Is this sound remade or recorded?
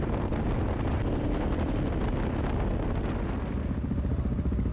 recorded